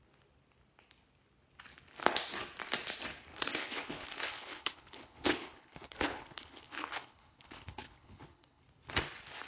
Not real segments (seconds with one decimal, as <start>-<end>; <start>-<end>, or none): 3.3-8.6